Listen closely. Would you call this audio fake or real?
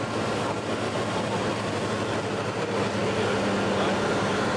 real